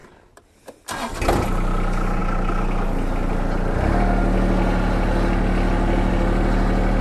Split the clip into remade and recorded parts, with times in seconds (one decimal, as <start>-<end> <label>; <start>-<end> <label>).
0.0-7.0 recorded